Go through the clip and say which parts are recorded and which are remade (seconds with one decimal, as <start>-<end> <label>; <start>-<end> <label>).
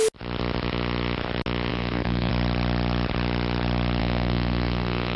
0.0-1.7 recorded; 1.7-2.3 remade; 2.3-4.0 recorded; 4.0-5.2 remade